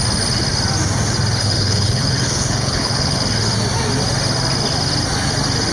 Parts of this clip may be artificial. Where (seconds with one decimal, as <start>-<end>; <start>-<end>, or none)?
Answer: 1.4-3.2